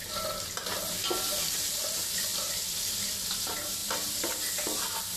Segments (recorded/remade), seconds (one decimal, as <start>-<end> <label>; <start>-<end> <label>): 0.0-2.8 remade; 2.8-3.8 recorded; 3.8-4.3 remade; 4.3-5.2 recorded